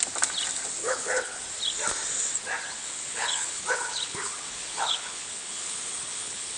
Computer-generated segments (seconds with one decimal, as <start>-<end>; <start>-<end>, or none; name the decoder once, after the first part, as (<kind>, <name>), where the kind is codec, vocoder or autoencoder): 0.8-1.4 (codec, HILCodec); 2.8-6.6